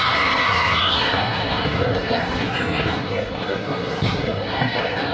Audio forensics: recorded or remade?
remade